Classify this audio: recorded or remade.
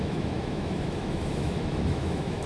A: remade